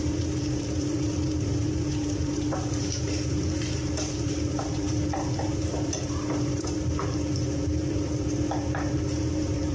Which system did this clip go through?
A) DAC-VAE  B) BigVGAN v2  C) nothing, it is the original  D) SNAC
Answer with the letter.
B